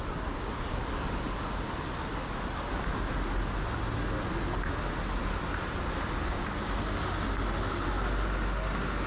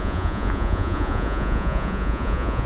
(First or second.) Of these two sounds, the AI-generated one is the second